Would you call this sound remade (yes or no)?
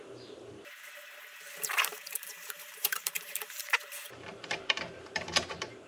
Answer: yes